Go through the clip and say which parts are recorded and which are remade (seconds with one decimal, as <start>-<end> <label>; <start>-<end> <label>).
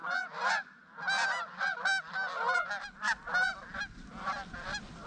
0.0-5.1 recorded